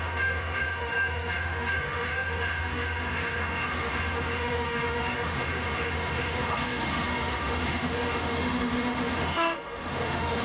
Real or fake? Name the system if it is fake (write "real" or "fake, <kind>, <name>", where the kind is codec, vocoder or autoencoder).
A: fake, autoencoder, DAC-VAE